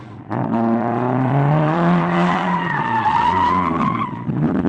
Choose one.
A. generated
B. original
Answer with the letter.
A